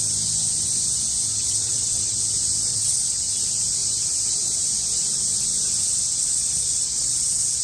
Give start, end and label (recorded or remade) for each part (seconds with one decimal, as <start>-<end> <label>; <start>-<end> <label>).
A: 0.0-1.3 recorded; 1.3-2.2 remade; 2.2-2.7 recorded; 2.7-3.3 remade; 3.3-5.8 recorded; 5.8-7.6 remade